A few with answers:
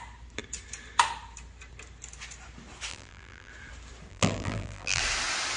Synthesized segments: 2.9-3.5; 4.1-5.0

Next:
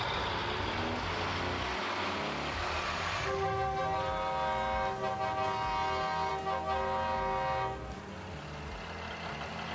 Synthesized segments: none

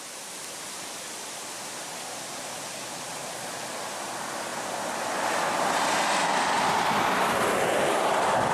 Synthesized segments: none